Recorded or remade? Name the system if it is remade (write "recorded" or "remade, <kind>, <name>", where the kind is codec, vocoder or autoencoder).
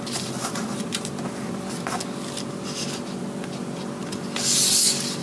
recorded